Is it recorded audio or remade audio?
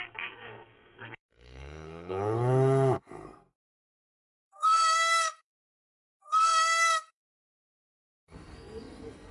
remade